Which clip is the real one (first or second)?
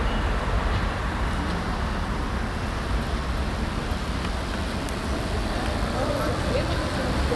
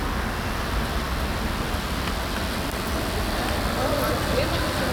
second